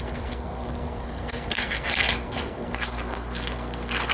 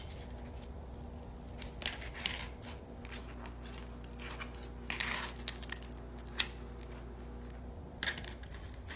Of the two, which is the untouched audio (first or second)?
second